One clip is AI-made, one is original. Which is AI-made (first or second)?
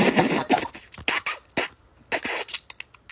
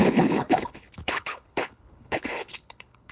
second